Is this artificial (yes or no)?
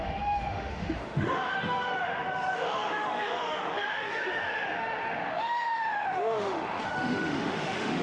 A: yes